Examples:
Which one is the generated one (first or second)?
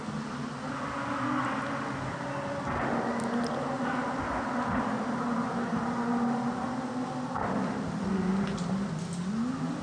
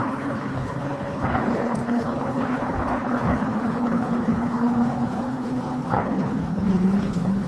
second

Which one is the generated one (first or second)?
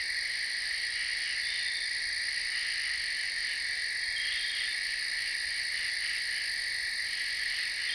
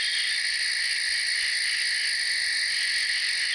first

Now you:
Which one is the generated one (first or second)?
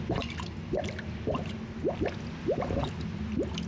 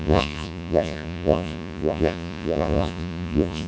second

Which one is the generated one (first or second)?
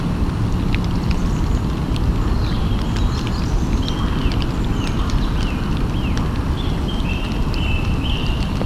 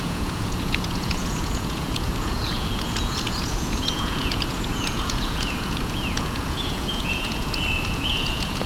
second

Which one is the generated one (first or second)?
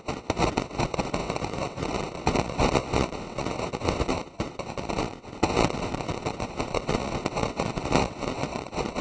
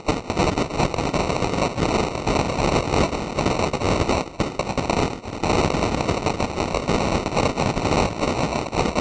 first